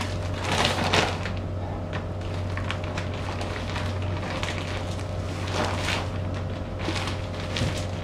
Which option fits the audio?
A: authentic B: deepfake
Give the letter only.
A